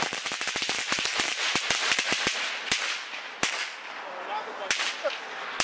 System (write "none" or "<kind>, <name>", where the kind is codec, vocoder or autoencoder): none